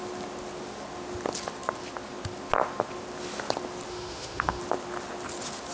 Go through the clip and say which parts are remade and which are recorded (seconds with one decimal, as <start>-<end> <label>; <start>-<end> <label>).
0.0-3.9 recorded; 3.9-4.6 remade; 4.6-5.7 recorded